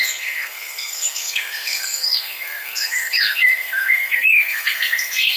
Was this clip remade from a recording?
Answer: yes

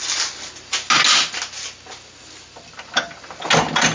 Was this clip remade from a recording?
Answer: no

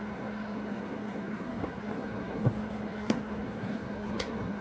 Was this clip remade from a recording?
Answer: yes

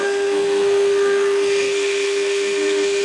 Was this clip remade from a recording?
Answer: yes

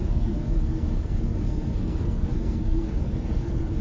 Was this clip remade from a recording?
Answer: yes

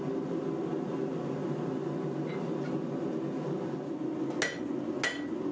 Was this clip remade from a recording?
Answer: no